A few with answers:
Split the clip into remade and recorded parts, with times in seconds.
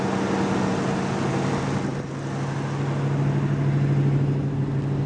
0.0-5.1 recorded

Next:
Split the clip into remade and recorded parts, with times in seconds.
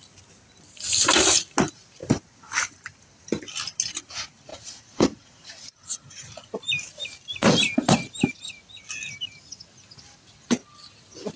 0.0-4.5 recorded; 4.5-6.5 remade; 6.5-11.4 recorded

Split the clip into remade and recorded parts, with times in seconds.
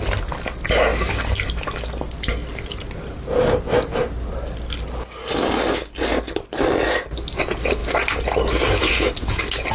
0.0-9.7 recorded